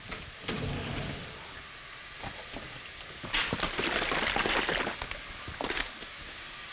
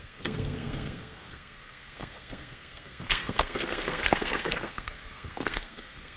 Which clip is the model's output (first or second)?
second